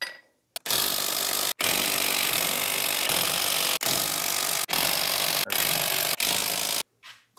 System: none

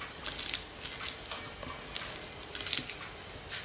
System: none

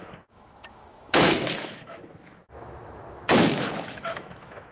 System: autoencoder, DAC-VAE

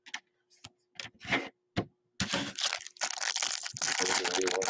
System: none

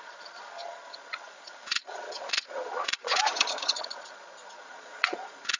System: vocoder, Vocos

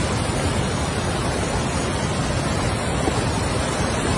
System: none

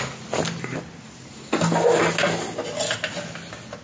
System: none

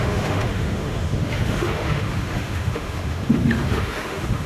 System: autoencoder, DAC-VAE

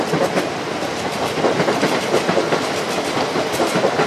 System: vocoder, BigVGAN v2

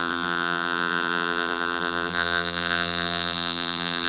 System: vocoder, BigVGAN v2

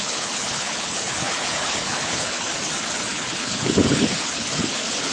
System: codec, HILCodec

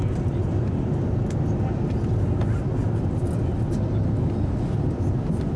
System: none